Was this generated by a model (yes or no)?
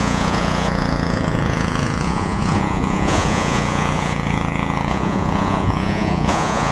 yes